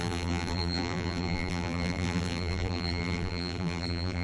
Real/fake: fake